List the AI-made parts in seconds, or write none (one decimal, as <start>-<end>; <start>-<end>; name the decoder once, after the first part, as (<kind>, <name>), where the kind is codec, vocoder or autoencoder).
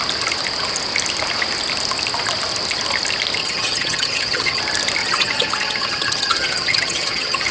3.4-4.6 (vocoder, HiFi-GAN); 5.0-7.5